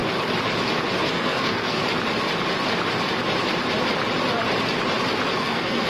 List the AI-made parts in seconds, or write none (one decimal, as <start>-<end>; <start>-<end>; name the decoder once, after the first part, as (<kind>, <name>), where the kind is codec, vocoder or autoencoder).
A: 1.0-1.8 (codec, SNAC); 5.3-5.9